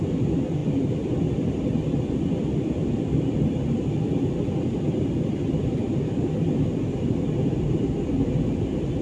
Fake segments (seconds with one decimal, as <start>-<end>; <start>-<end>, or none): 0.0-0.6; 5.1-5.8; 8.6-9.0